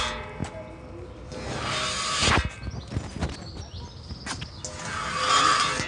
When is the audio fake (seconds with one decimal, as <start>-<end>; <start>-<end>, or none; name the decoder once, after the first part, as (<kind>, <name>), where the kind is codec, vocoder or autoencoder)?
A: none